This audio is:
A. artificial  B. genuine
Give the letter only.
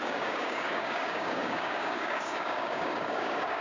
A